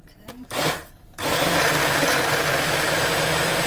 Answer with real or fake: fake